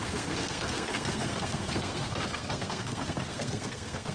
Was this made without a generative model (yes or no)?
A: no